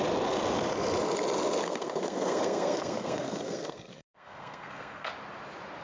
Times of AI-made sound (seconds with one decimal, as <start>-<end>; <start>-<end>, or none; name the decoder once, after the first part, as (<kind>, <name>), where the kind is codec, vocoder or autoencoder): 1.6-5.1 (codec, SNAC)

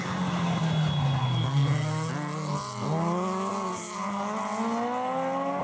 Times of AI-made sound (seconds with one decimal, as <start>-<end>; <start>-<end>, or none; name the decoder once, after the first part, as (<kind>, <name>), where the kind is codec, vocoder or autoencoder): 1.2-2.1 (codec, SNAC)